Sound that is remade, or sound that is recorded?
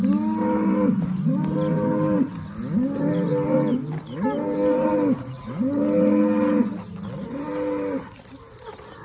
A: recorded